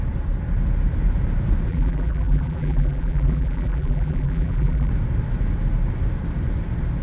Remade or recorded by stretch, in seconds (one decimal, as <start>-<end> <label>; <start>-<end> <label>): 0.0-1.7 recorded; 1.7-4.9 remade; 4.9-7.0 recorded